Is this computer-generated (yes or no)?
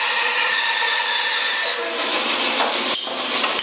no